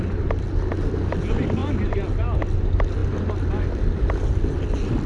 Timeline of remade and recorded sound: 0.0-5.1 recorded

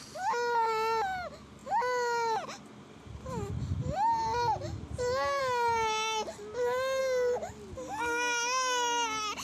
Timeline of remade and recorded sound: 0.0-9.4 recorded

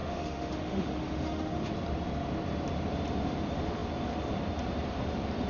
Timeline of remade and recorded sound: 0.0-1.7 remade; 1.7-5.5 recorded

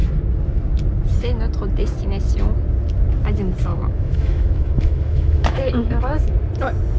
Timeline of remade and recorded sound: 0.0-3.7 recorded; 3.7-6.3 remade; 6.3-7.0 recorded

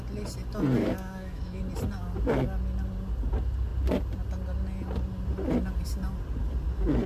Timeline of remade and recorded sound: 0.0-0.8 recorded; 0.8-1.6 remade; 1.6-7.1 recorded

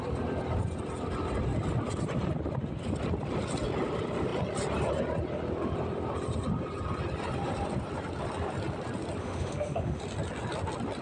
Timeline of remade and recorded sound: 0.0-9.2 recorded; 9.2-10.0 remade; 10.0-11.0 recorded

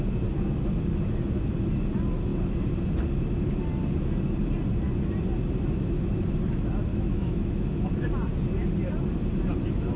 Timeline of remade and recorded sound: 0.0-6.9 recorded; 6.9-8.0 remade; 8.0-10.0 recorded

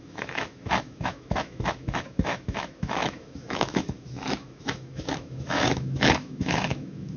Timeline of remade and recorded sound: 0.0-7.2 remade